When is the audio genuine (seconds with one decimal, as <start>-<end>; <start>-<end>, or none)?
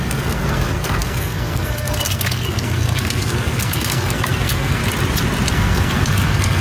4.8-5.5